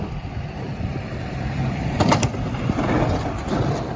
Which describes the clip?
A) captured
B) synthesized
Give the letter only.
B